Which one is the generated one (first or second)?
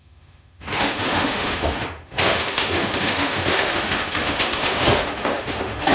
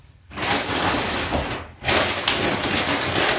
first